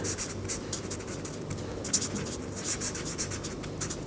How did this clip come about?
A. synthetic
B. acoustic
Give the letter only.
B